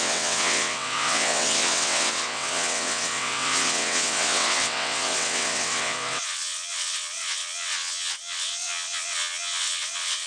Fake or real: fake